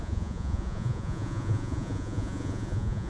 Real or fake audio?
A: fake